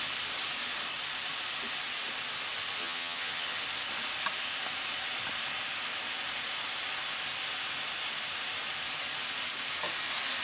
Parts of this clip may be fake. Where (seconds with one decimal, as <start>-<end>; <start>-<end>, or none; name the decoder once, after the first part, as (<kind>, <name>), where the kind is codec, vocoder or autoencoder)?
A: 2.8-3.6 (vocoder, HiFi-GAN)